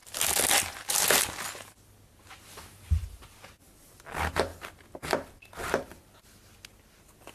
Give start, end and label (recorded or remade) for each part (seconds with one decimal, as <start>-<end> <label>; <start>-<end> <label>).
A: 0.0-7.3 recorded